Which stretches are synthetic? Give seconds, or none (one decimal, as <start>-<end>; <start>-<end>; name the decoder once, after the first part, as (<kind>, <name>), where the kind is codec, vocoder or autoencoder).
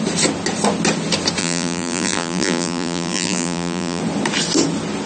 1.4-4.0 (vocoder, BigVGAN v2)